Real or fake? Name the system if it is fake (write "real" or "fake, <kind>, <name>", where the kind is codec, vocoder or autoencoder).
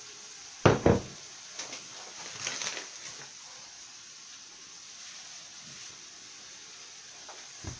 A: real